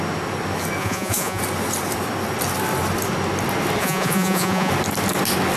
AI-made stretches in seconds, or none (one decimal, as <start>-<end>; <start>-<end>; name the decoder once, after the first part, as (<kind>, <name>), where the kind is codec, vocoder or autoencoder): 0.8-1.4 (vocoder, Vocos); 3.8-4.7